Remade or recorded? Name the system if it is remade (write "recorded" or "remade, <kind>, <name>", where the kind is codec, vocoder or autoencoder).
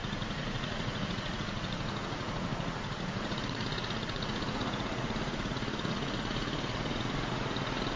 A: remade, vocoder, Vocos